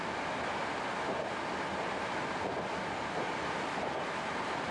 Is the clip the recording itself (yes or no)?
yes